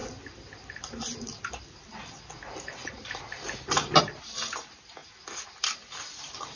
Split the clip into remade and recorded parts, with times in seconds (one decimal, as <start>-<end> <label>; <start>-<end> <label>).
0.0-6.6 recorded